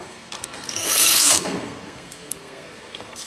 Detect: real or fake fake